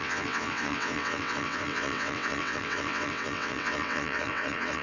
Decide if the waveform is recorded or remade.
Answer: remade